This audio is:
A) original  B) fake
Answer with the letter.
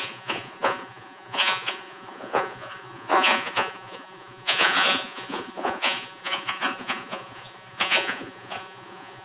B